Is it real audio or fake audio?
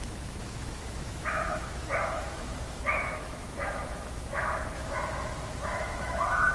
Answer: fake